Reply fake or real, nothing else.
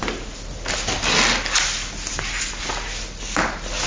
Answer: real